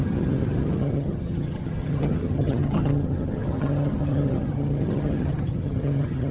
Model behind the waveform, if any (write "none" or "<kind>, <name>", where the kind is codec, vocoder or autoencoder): vocoder, HiFi-GAN